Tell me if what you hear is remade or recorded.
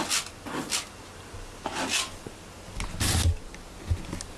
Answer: recorded